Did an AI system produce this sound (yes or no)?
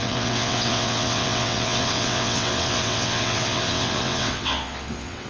yes